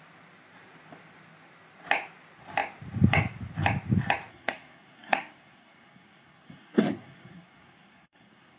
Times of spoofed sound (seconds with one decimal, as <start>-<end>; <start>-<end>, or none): 4.3-8.6